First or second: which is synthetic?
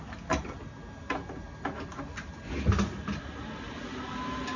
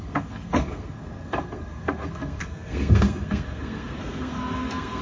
second